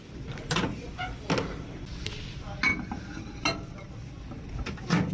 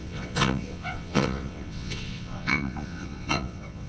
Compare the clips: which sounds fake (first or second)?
second